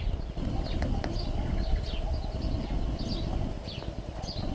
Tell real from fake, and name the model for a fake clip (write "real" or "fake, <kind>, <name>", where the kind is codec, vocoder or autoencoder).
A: real